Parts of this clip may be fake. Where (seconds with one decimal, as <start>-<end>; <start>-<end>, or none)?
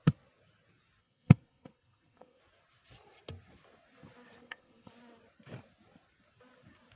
1.0-2.4; 4.4-4.9